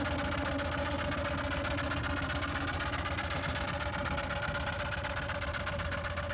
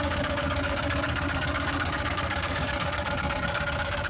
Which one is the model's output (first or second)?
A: second